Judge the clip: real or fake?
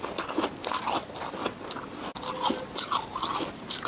real